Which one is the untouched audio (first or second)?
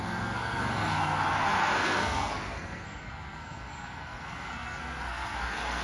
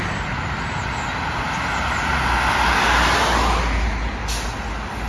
second